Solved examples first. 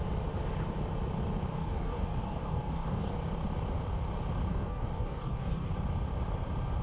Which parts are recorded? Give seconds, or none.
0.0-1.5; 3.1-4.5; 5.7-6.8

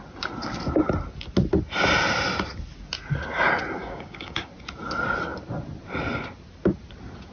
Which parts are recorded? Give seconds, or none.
0.0-3.8; 4.5-7.3

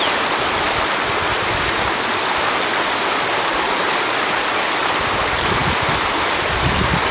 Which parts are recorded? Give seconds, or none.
0.0-7.1

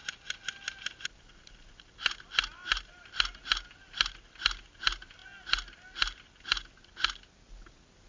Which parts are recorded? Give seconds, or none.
0.0-8.1